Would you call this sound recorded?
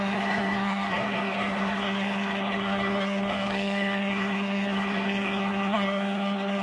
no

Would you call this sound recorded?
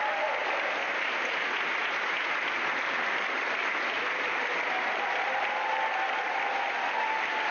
yes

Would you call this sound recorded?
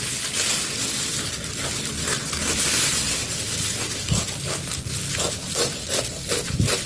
yes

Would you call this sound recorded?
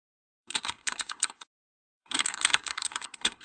no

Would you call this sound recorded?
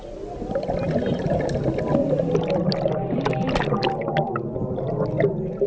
yes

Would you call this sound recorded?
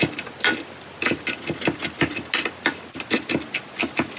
yes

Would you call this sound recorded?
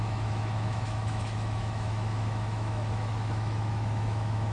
no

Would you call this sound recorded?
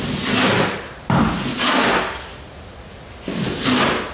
yes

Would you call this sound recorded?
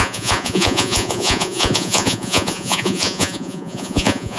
no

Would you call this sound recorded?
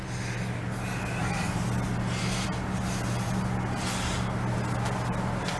yes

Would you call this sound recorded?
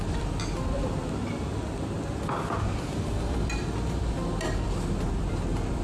yes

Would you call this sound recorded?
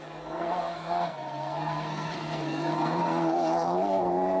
no